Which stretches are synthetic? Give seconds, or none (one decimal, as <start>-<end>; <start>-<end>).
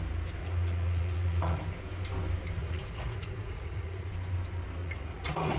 0.4-1.6; 2.6-4.1; 4.8-5.6